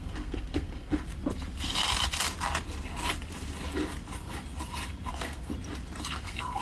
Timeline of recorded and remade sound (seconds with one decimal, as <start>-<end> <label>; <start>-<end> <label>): 0.0-1.1 remade; 1.1-5.1 recorded; 5.1-5.5 remade; 5.5-6.1 recorded; 6.1-6.6 remade